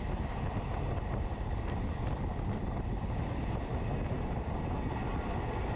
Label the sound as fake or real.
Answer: real